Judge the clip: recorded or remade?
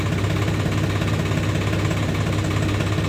recorded